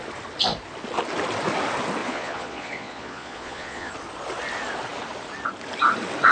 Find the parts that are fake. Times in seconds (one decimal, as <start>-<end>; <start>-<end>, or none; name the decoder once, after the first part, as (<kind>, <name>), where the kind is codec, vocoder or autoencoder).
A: 2.0-3.9 (vocoder, Vocos)